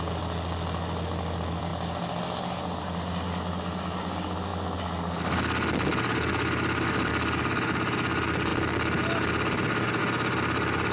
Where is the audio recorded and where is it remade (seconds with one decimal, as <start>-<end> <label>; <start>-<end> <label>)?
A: 0.0-10.9 recorded